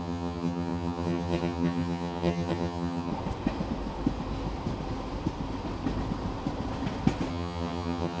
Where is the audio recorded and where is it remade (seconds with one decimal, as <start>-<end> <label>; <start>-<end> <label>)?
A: 0.0-3.1 remade; 3.1-7.3 recorded; 7.3-8.2 remade